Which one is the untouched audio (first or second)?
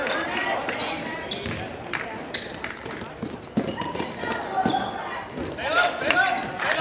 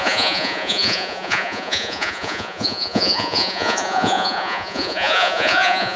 first